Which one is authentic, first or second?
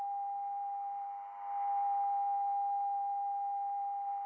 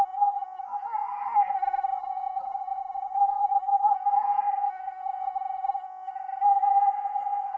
first